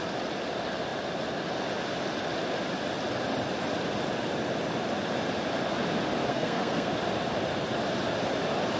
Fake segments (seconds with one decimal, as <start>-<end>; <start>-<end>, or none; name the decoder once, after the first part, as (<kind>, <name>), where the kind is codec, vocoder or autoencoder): 6.3-6.9 (codec, SNAC)